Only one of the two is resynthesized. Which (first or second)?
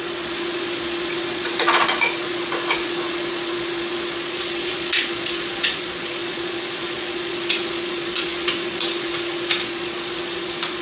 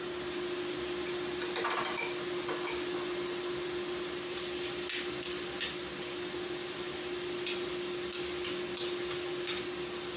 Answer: first